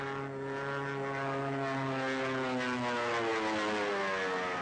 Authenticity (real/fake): real